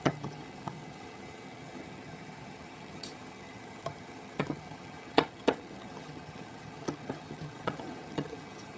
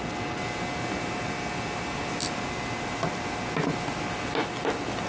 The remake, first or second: first